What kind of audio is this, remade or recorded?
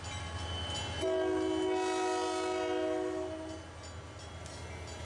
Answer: recorded